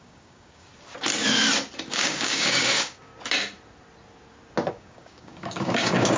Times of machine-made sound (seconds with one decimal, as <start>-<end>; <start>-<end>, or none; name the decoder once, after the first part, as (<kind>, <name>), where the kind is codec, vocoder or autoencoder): 0.0-0.7 (codec, DAC); 1.9-3.1; 4.7-6.2